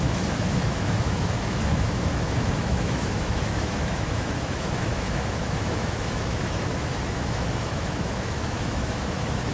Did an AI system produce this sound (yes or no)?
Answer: yes